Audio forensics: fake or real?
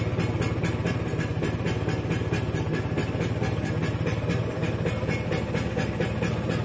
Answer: real